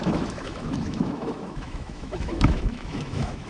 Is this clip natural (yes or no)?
no